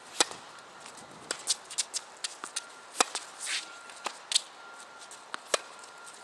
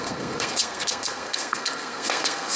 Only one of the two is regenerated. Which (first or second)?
second